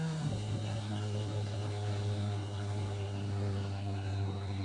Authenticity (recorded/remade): remade